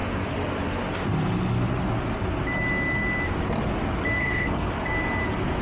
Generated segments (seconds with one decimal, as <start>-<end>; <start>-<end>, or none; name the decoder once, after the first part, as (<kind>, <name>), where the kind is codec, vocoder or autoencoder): 4.2-4.7 (codec, HILCodec)